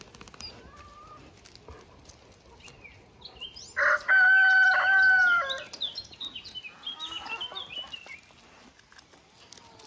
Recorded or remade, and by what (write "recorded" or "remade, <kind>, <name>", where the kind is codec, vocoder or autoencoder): recorded